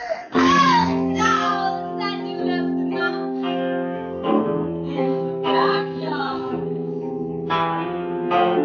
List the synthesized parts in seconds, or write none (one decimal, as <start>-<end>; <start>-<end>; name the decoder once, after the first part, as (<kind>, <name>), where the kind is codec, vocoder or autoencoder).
0.0-1.5 (codec, SNAC); 3.0-8.6